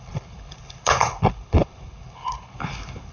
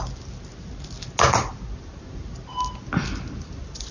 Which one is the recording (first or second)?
second